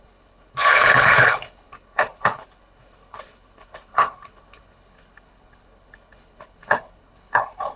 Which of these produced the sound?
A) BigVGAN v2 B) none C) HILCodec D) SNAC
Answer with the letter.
C